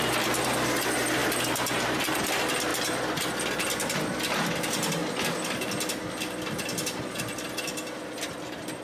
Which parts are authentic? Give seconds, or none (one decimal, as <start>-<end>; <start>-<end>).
0.0-8.8